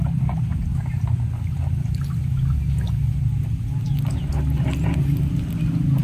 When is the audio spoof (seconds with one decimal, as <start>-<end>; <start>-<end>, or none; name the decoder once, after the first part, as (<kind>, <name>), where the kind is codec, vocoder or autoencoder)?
none